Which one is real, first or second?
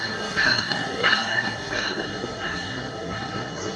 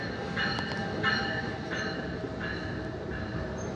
second